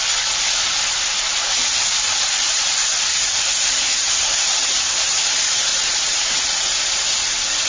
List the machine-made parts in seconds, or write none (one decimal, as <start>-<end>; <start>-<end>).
1.3-5.3; 5.7-6.3